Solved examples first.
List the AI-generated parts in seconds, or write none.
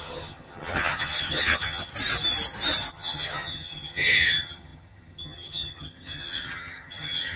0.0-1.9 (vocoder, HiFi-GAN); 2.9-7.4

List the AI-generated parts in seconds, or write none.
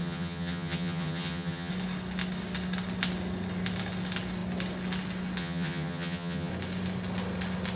0.0-1.7 (vocoder, HiFi-GAN); 5.4-6.5